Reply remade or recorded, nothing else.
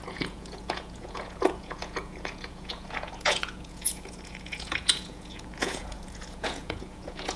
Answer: remade